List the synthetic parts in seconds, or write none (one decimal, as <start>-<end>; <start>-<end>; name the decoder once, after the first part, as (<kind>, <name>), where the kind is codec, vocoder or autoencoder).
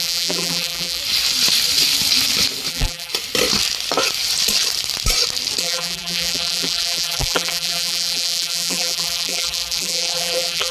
0.0-1.0 (vocoder, BigVGAN v2); 2.7-3.1; 5.6-10.7